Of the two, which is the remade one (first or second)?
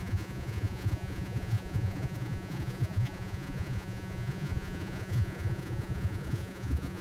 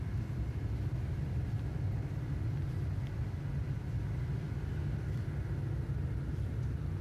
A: first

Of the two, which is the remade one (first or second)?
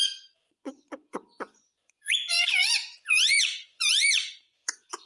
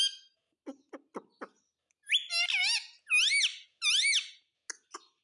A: first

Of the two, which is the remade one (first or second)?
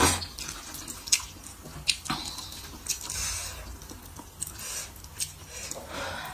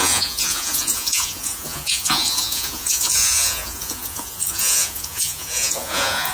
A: second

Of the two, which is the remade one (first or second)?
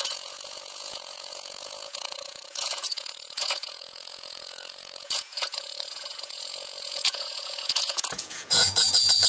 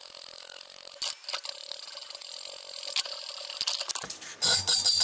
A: first